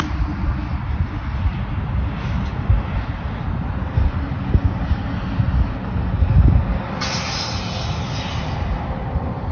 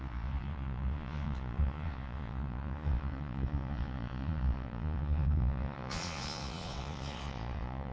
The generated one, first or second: second